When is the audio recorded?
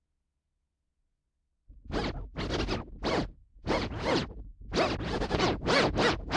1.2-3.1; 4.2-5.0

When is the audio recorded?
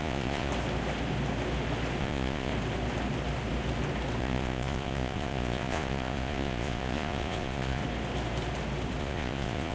0.5-2.0; 2.5-4.2; 7.8-9.0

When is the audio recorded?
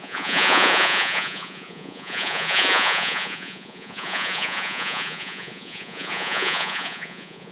none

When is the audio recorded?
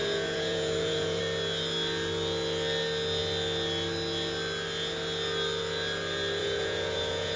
1.2-6.4